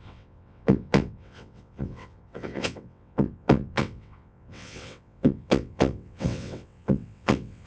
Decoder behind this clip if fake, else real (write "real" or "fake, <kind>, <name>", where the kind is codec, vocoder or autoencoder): fake, vocoder, WaveNeXt